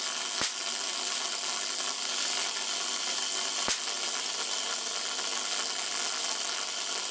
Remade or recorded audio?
recorded